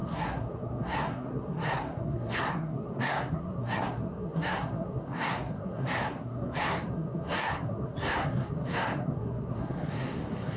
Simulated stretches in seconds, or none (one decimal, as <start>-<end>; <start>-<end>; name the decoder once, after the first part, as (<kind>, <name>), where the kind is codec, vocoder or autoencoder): 0.0-10.6 (codec, SNAC)

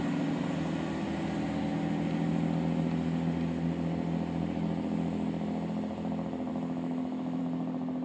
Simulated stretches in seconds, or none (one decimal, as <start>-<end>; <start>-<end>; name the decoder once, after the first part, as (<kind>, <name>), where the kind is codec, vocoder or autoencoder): 6.5-7.4 (autoencoder, DAC-VAE)

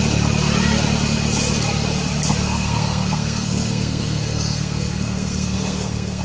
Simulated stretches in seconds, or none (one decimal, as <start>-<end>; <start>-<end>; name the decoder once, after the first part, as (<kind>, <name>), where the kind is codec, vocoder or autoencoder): 2.4-6.2 (codec, SNAC)

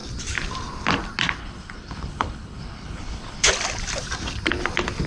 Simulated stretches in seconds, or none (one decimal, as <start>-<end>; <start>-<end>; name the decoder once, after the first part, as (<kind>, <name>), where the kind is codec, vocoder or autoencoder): 1.4-3.5 (codec, HILCodec)

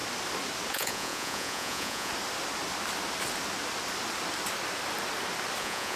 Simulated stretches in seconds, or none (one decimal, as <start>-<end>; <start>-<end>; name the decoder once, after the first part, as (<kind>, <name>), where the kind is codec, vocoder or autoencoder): 0.7-2.1 (vocoder, Vocos); 5.6-6.0

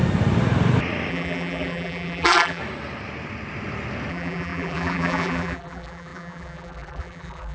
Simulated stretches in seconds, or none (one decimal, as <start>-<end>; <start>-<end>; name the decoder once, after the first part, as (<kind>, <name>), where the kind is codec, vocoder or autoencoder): 1.1-2.6 (vocoder, BigVGAN v2); 4.1-7.5